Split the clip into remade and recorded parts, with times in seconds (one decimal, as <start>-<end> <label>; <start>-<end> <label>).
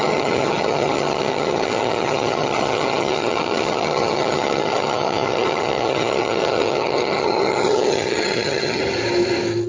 0.0-8.8 remade; 8.8-9.7 recorded